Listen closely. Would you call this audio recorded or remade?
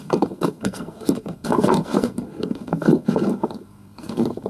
remade